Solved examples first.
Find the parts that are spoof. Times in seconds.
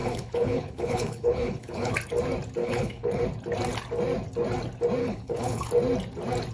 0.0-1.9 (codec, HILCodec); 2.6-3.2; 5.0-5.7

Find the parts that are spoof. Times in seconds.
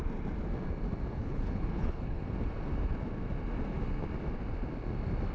1.2-2.2 (codec, HILCodec)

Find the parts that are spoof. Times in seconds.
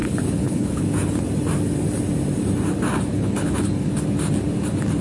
0.0-0.8 (codec, HILCodec); 3.1-3.9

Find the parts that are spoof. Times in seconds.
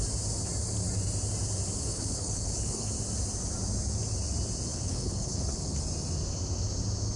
1.9-2.9 (codec, HILCodec); 4.7-5.8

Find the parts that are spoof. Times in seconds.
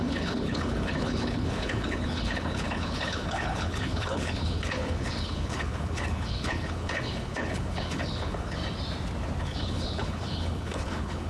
0.0-8.6 (codec, HILCodec); 9.4-11.3